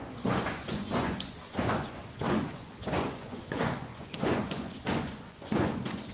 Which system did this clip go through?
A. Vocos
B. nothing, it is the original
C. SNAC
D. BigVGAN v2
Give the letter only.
A